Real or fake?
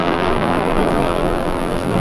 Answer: fake